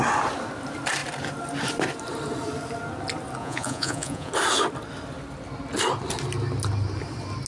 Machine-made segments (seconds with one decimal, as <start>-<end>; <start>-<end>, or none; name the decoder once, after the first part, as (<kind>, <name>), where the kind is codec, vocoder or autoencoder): 3.4-4.3 (vocoder, Vocos)